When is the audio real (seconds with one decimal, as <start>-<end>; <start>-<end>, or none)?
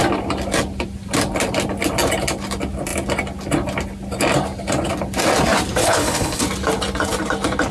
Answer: 0.0-5.8; 6.4-7.7